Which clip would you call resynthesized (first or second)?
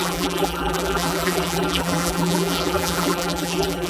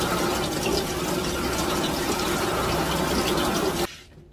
first